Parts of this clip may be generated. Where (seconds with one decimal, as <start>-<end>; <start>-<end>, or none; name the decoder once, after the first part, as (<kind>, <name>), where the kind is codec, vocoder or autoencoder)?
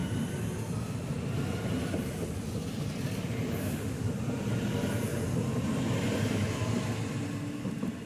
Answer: 3.6-4.1 (autoencoder, DAC-VAE)